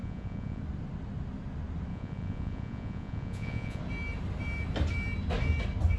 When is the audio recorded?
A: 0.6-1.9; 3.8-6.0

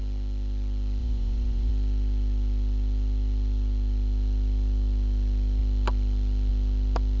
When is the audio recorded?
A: 0.0-1.0; 1.7-7.2

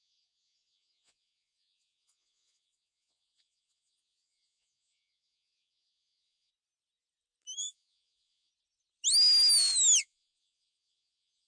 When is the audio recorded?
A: 6.5-7.6; 8.5-10.0